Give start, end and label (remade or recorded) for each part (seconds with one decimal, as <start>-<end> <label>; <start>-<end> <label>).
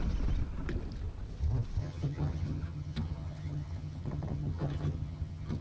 0.0-1.8 recorded; 1.8-5.6 remade